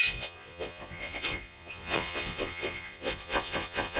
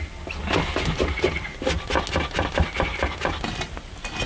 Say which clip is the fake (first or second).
first